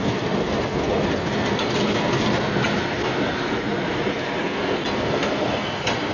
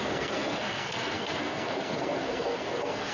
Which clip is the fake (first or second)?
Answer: second